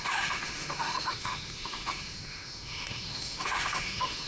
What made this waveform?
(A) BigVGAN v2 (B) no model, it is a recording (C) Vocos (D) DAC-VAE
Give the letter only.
D